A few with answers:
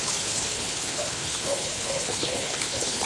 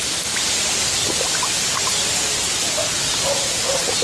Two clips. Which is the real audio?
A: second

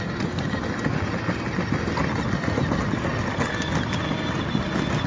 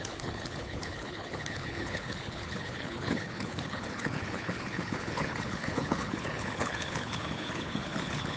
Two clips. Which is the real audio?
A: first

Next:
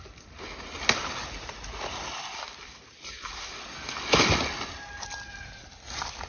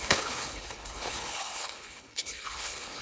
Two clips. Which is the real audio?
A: first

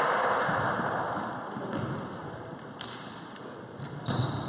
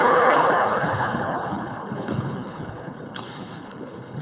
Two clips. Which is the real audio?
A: first